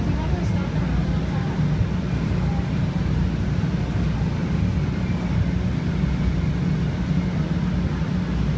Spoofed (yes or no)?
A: no